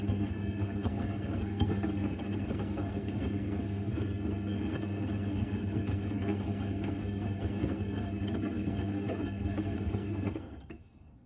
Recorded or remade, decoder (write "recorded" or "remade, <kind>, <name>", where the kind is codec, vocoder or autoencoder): remade, codec, SNAC